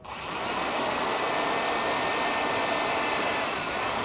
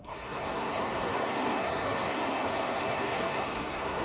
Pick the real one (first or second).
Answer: first